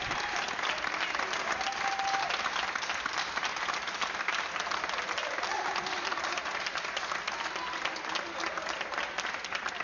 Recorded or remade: recorded